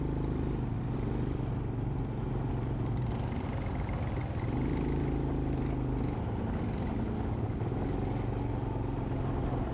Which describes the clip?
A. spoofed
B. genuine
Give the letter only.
B